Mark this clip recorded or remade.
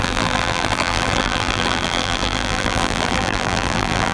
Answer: remade